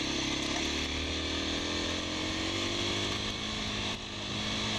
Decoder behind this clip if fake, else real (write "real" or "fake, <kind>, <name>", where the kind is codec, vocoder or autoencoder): real